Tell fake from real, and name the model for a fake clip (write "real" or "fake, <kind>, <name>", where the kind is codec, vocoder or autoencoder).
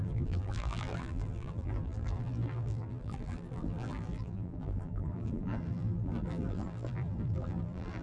fake, vocoder, BigVGAN v2